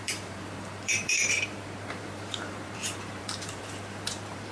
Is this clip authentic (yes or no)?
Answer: no